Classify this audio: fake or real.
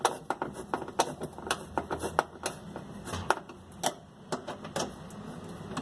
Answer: real